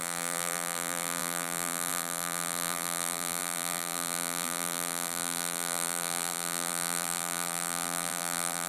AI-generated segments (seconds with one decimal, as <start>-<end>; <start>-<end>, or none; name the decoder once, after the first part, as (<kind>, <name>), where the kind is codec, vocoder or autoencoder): 0.0-8.7 (vocoder, BigVGAN v2)